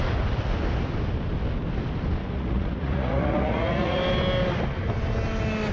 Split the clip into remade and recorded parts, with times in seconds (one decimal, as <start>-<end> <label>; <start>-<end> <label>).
0.0-2.2 recorded; 2.2-4.0 remade; 4.0-5.7 recorded